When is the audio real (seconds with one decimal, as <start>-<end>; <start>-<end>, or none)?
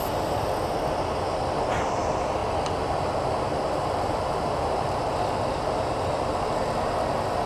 0.0-2.4; 3.1-3.5; 4.2-7.5